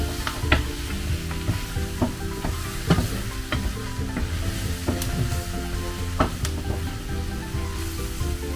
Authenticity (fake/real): real